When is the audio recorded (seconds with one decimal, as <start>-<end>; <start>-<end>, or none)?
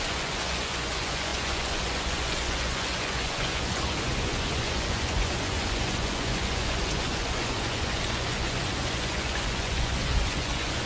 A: none